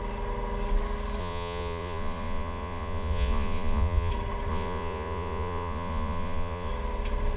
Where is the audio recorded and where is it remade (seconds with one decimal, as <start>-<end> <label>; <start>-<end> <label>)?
0.0-1.2 recorded; 1.2-4.1 remade; 4.1-4.5 recorded; 4.5-6.7 remade; 6.7-7.4 recorded